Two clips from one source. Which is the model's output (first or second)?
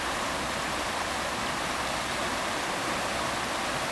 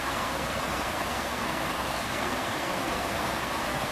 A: second